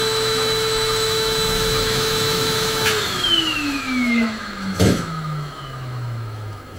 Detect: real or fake fake